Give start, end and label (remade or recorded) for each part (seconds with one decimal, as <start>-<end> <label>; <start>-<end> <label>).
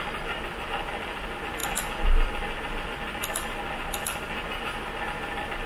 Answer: 0.0-5.7 recorded